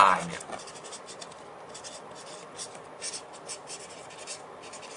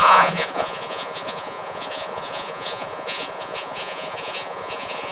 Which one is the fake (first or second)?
second